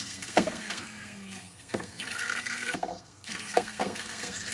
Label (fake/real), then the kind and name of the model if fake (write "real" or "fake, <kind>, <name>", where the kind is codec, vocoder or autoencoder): fake, codec, SNAC